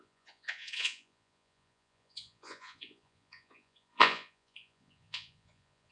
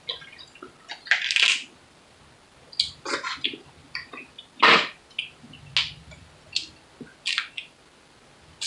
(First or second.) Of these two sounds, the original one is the second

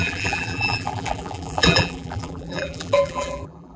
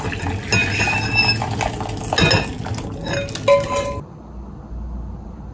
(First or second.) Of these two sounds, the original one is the second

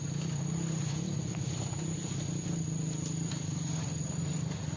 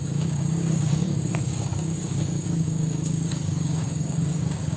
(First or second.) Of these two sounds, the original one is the first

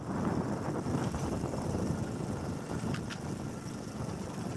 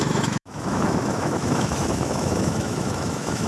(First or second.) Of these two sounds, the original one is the first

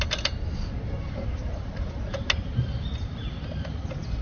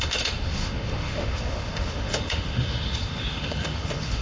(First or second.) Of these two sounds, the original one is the first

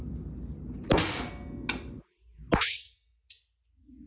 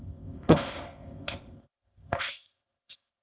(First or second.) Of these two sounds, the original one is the first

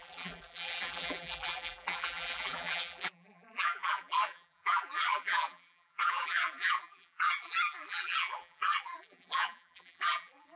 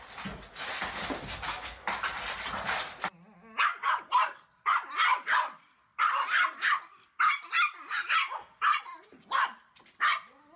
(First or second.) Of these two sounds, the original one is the second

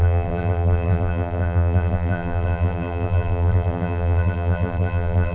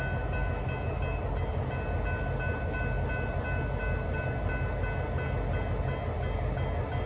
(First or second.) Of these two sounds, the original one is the second